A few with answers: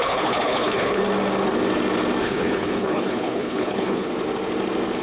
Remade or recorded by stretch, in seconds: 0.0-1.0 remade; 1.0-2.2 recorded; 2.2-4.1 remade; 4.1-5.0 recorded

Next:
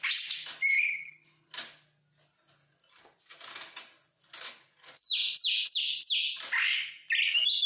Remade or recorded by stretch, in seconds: 0.0-0.7 recorded; 0.7-1.5 remade; 1.5-7.7 recorded

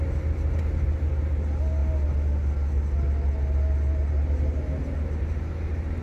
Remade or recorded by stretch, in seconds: 0.0-6.0 recorded

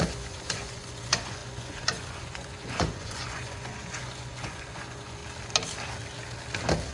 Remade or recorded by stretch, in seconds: 0.0-5.2 remade; 5.2-6.9 recorded

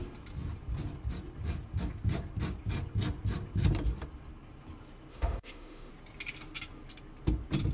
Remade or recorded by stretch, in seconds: 0.0-5.1 recorded; 5.1-5.9 remade; 5.9-7.7 recorded

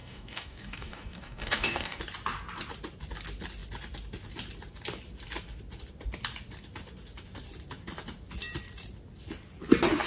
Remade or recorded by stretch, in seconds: 0.0-2.0 remade; 2.0-10.1 recorded